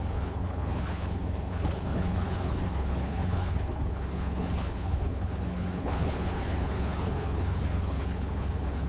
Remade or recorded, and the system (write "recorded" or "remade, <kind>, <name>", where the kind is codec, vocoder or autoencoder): remade, codec, HILCodec